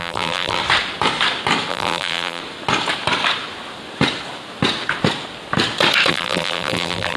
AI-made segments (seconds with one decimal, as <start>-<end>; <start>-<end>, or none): 0.0-0.6; 1.7-2.4; 6.1-7.2